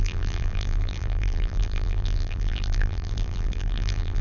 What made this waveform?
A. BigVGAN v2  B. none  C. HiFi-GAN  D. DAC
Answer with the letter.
A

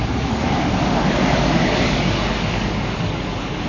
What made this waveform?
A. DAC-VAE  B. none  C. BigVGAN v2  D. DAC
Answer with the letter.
D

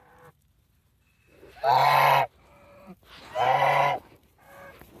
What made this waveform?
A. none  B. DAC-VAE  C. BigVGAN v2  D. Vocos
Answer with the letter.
A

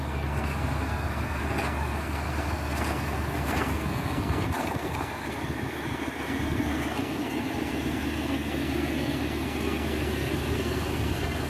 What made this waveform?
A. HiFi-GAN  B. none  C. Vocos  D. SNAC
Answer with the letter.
D